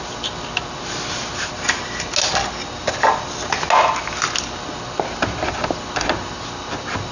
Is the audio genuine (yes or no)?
yes